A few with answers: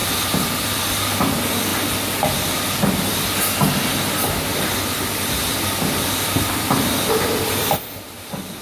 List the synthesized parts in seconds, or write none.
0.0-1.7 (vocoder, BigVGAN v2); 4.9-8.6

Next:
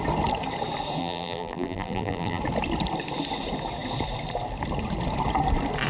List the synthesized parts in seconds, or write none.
1.0-2.4 (vocoder, BigVGAN v2)

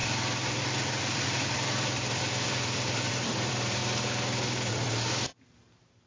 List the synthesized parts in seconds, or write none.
0.0-3.8 (vocoder, BigVGAN v2); 4.7-6.1

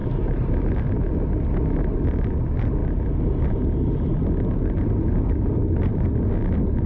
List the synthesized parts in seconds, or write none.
0.0-0.6 (vocoder, BigVGAN v2)